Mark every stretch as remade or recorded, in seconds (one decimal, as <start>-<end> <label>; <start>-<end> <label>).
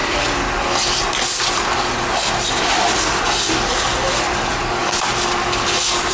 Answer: 0.0-6.1 recorded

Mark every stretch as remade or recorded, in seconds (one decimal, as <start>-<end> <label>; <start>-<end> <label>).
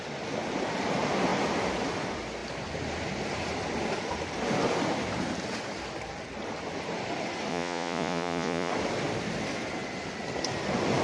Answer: 0.0-7.5 recorded; 7.5-8.7 remade; 8.7-11.0 recorded